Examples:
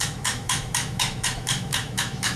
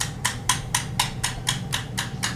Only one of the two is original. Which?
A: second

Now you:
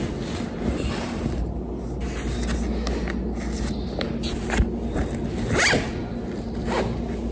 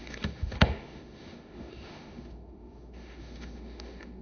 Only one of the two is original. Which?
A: first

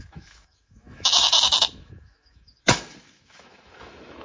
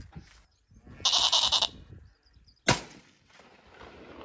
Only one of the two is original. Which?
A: second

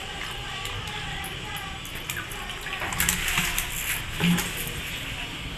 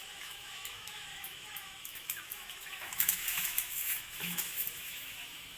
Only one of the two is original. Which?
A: first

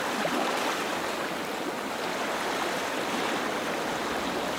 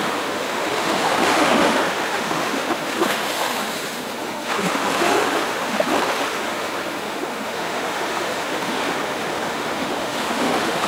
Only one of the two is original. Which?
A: first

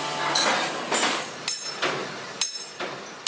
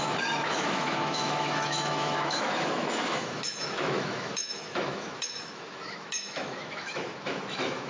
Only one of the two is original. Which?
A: first